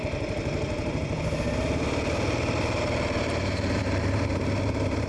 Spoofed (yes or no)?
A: yes